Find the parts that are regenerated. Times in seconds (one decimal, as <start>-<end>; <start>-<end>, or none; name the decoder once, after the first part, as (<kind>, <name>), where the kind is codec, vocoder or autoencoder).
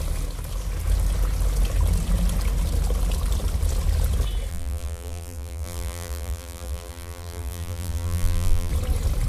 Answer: 4.5-8.7 (vocoder, BigVGAN v2)